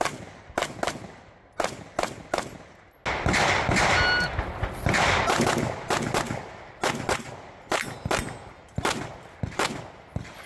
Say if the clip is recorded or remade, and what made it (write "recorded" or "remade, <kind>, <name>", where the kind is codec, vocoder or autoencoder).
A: recorded